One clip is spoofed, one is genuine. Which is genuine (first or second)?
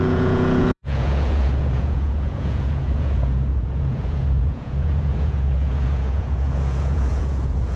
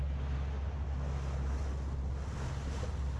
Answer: second